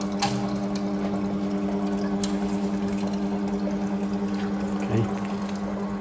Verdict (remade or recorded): recorded